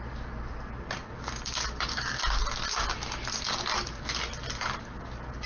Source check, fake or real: real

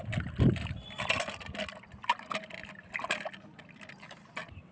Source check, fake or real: real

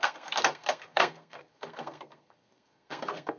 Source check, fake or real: fake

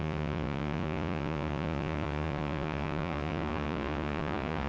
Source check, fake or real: fake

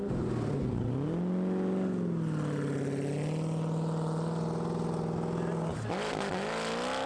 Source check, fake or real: real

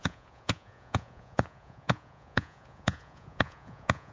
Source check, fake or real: fake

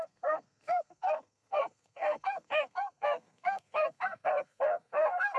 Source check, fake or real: fake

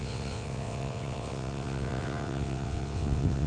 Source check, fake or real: fake